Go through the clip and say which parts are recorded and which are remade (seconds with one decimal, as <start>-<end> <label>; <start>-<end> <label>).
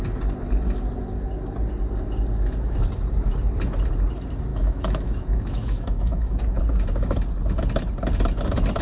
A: 0.0-4.5 recorded; 4.5-6.6 remade; 6.6-8.8 recorded